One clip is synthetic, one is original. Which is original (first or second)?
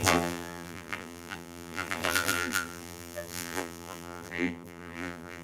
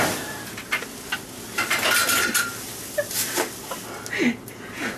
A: second